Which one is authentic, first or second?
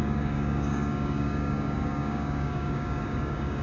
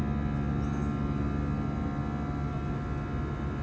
second